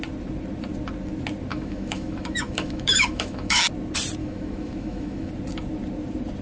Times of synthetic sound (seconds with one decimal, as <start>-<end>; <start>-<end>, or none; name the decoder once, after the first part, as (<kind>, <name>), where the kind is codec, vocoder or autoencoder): 1.5-3.6 (autoencoder, DAC-VAE); 4.2-5.3